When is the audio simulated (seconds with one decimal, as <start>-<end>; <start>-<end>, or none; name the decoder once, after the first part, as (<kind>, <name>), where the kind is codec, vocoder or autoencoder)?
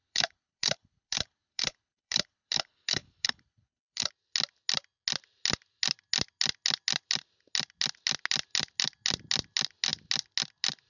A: 0.0-4.1 (codec, HILCodec)